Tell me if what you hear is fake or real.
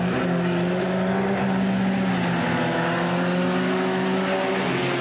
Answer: real